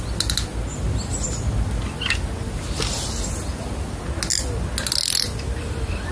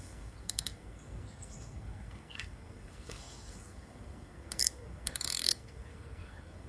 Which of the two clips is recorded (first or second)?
first